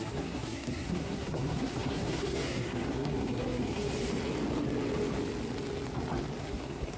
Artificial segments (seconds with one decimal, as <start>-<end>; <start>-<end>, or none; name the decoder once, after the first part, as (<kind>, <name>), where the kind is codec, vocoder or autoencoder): 0.0-3.9 (codec, SNAC); 6.4-7.0